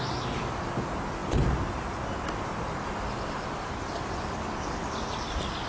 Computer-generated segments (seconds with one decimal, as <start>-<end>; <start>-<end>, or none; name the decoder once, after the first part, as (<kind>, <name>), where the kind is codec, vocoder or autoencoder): none